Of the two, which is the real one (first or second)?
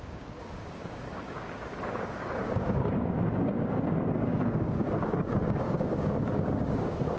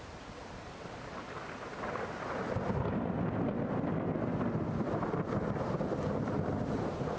second